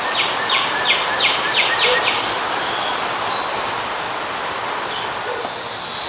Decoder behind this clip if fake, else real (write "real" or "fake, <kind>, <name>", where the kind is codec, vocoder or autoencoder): real